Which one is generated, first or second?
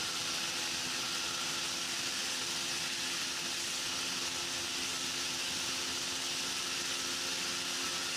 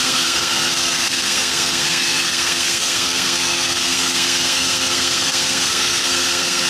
second